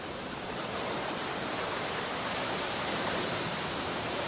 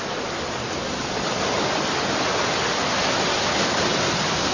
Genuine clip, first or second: second